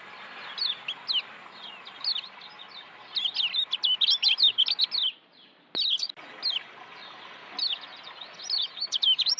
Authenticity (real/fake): real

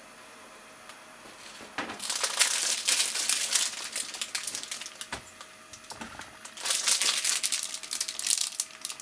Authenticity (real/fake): real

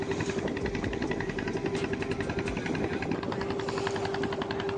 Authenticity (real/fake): real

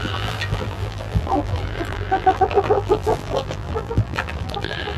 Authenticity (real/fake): fake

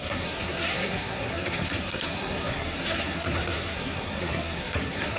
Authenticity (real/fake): fake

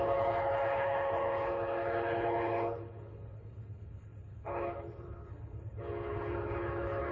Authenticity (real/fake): fake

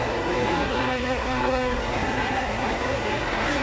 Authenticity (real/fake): fake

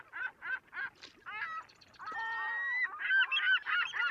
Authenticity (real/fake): real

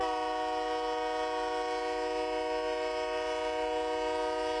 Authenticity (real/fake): real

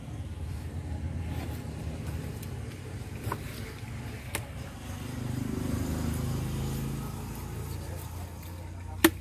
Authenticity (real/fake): real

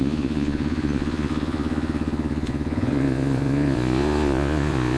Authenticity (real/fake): fake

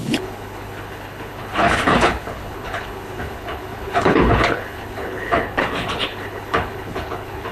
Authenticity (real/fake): fake